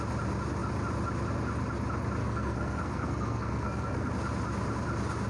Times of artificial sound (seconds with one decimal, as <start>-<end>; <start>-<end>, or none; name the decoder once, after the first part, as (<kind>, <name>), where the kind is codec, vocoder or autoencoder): 2.2-4.1 (codec, SNAC)